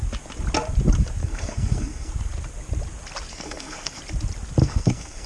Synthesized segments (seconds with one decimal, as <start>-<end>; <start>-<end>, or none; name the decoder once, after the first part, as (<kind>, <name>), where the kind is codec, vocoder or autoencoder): 1.2-2.1 (codec, SNAC); 3.3-4.0; 4.6-5.3